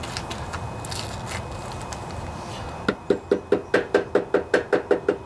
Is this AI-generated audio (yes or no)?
no